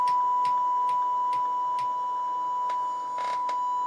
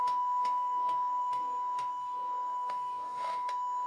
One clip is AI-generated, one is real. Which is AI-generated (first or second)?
second